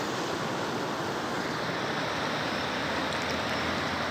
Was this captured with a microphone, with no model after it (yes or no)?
yes